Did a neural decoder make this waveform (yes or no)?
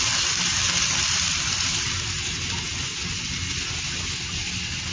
no